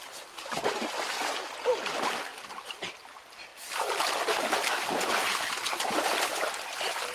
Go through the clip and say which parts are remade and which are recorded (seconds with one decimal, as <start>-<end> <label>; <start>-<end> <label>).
0.0-2.3 recorded; 2.3-2.9 remade; 2.9-7.1 recorded